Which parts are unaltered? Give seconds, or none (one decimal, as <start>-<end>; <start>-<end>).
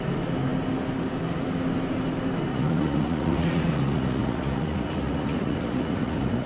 0.0-2.5